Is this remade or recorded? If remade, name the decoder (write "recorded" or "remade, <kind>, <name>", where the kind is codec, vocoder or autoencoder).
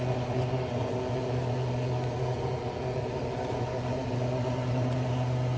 recorded